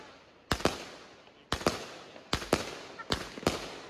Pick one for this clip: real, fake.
real